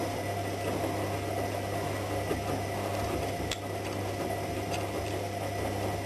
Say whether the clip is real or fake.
fake